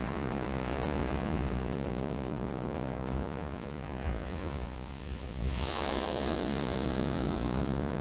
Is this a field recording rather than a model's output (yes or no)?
no